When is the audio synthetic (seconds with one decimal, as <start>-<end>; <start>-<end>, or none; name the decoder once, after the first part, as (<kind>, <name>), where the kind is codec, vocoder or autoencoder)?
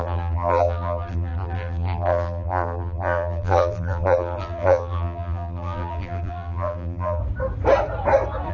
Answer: 0.0-7.2 (vocoder, BigVGAN v2)